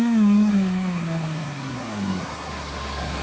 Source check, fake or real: fake